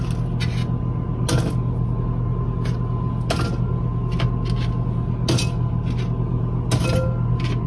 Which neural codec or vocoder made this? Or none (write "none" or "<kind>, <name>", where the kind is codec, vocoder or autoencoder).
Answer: none